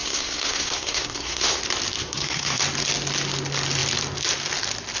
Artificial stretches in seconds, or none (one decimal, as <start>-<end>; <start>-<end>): 0.0-1.6; 2.0-2.6